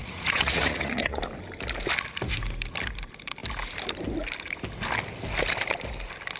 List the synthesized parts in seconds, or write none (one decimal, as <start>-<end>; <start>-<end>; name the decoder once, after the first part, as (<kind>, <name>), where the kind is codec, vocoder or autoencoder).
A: 0.0-1.2 (vocoder, Vocos)